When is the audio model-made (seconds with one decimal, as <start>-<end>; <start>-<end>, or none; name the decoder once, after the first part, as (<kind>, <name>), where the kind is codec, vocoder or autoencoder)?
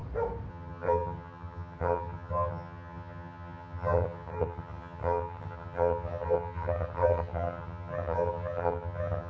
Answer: 0.5-9.3 (vocoder, HiFi-GAN)